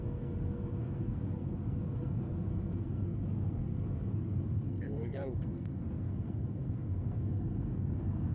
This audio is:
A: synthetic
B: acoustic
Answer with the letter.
A